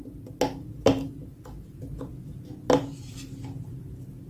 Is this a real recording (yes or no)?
yes